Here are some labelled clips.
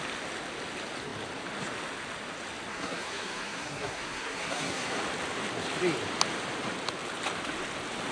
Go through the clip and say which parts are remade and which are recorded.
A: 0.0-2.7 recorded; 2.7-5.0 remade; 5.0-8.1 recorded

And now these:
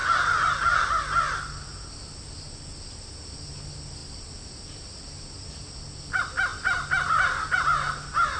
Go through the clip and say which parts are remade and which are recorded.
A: 0.0-8.4 recorded

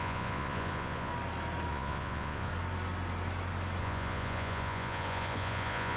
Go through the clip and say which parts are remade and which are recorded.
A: 0.0-1.1 remade; 1.1-1.7 recorded; 1.7-2.5 remade; 2.5-3.8 recorded; 3.8-6.0 remade